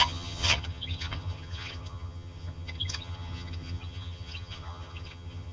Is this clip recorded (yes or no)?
no